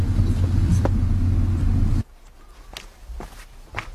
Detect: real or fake real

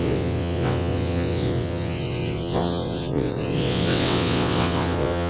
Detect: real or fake fake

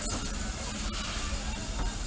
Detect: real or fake real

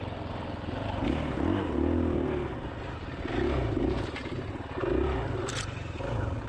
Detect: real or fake real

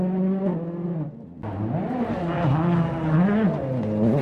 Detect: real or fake real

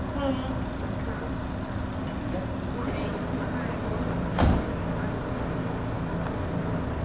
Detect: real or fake real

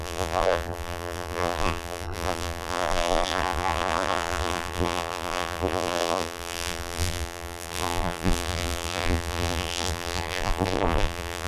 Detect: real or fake fake